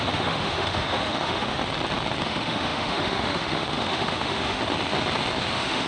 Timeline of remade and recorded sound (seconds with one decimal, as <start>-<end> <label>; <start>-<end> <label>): 0.0-1.6 remade; 1.6-2.2 recorded; 2.2-4.6 remade; 4.6-5.5 recorded; 5.5-5.9 remade